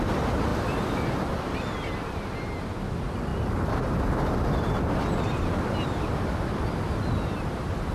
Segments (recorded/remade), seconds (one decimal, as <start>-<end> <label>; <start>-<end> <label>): 0.0-3.3 recorded; 3.3-5.2 remade; 5.2-7.9 recorded